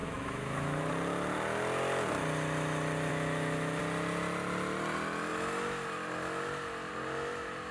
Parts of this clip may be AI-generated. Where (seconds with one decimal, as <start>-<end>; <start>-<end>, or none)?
0.0-0.9; 3.1-3.8